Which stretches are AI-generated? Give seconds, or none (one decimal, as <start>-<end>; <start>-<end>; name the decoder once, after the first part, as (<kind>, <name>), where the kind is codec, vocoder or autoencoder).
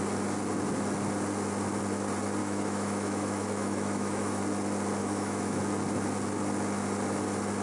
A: 2.4-4.4 (autoencoder, DAC-VAE); 5.0-5.6